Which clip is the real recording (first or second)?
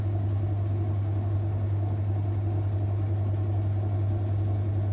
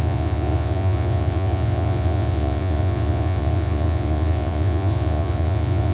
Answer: first